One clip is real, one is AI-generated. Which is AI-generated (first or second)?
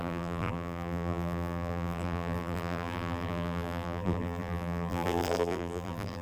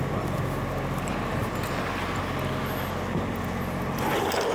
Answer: first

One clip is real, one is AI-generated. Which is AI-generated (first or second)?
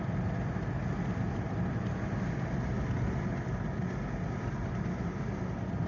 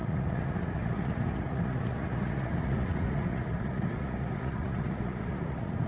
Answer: second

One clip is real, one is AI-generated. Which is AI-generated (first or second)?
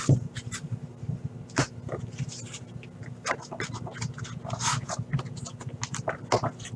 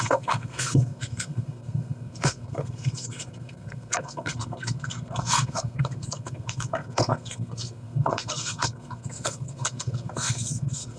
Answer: second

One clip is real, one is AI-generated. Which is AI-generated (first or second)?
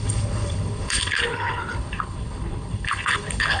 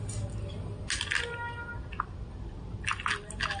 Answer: first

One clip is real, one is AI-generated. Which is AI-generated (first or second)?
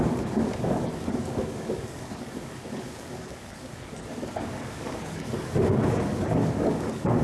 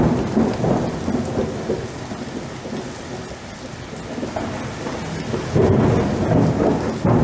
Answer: first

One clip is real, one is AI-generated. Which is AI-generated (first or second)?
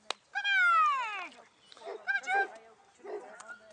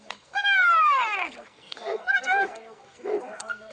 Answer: second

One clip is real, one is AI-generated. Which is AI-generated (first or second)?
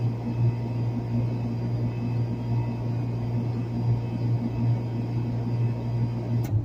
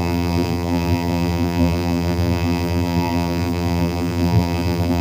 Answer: second